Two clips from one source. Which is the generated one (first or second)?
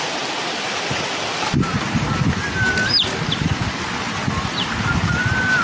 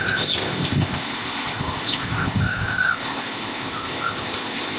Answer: second